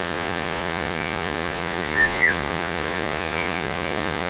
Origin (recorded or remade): remade